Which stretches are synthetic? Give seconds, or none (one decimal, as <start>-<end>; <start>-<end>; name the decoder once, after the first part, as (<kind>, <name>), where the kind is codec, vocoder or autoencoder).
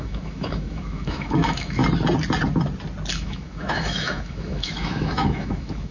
0.0-1.8 (autoencoder, DAC-VAE); 3.1-5.9